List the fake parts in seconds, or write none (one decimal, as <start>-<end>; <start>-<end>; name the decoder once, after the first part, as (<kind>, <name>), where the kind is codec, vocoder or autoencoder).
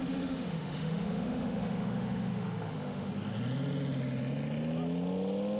0.0-3.1 (autoencoder, DAC-VAE)